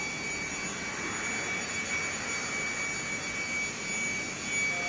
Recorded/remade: recorded